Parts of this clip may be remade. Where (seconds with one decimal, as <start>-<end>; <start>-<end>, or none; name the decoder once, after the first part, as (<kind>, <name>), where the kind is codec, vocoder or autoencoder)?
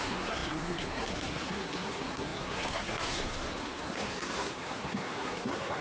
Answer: 0.0-5.8 (codec, SNAC)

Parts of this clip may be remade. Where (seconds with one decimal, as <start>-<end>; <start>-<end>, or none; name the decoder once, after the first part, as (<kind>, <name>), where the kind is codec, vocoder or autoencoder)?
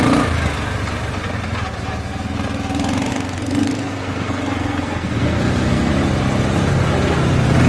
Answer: 3.1-5.9 (codec, SNAC)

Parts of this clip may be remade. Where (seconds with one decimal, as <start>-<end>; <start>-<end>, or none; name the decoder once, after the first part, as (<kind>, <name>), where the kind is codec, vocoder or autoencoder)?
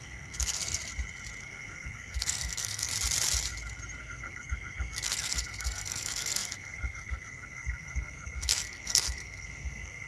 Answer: 0.0-0.8 (codec, SNAC); 1.4-2.9; 4.0-10.1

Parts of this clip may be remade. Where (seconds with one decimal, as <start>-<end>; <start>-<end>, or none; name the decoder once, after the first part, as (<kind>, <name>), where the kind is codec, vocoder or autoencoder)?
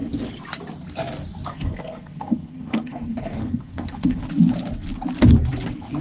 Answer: 1.5-4.2 (codec, SNAC)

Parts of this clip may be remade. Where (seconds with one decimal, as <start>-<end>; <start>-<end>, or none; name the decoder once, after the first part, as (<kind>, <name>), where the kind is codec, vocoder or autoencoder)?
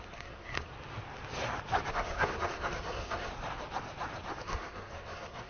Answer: 0.0-0.7 (codec, SNAC); 1.9-3.3; 4.4-5.5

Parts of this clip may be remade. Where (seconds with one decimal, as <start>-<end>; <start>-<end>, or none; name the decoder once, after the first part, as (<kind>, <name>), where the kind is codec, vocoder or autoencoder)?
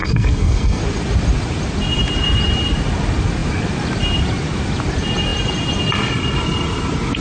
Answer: 0.0-0.8 (codec, SNAC)